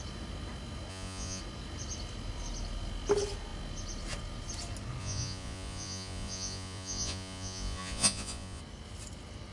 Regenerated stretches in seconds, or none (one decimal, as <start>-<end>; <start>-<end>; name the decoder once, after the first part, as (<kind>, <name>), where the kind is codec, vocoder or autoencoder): 0.9-1.4 (vocoder, Vocos); 5.0-8.6